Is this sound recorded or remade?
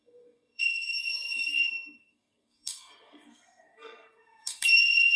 remade